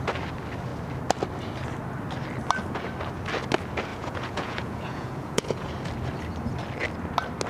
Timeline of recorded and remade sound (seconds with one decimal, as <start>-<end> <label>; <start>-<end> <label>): 0.0-3.9 recorded; 3.9-5.7 remade; 5.7-7.5 recorded